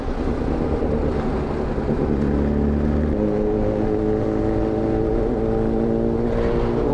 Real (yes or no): yes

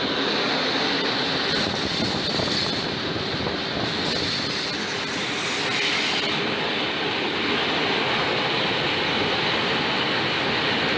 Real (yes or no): yes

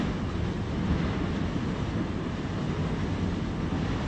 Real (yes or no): yes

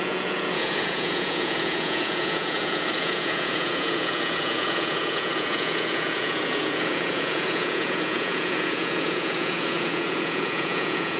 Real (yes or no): no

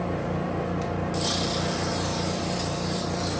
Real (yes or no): yes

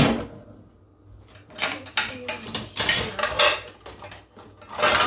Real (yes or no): yes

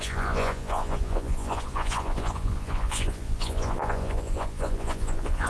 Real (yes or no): no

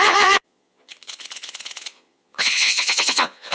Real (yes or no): no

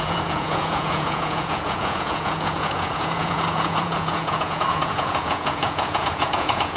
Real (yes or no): no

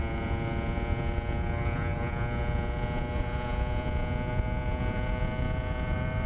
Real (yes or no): no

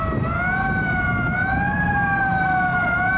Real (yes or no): yes